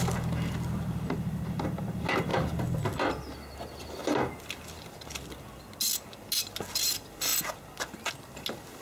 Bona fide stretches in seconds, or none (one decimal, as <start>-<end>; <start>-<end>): 0.0-8.8